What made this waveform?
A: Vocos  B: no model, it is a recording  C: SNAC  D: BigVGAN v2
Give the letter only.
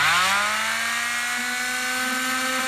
B